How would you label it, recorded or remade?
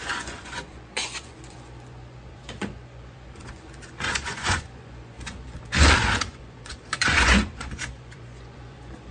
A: remade